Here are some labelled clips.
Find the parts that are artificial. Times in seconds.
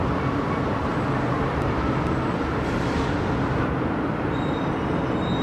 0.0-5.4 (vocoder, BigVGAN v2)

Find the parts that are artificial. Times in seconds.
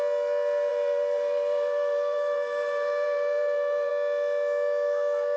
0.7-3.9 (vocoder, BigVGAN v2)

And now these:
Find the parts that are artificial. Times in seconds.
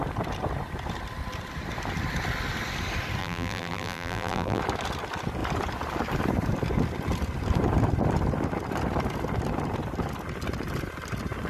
3.2-4.6 (vocoder, BigVGAN v2)